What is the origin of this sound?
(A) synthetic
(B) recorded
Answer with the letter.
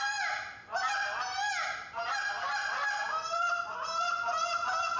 B